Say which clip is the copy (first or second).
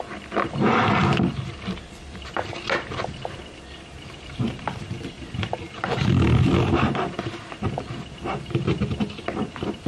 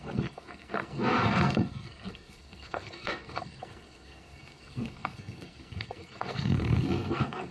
second